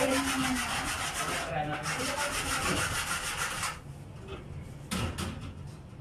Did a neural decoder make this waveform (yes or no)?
no